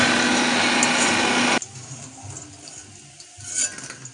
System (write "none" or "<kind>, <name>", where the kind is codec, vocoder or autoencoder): none